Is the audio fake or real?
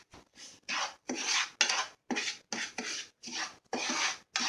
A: real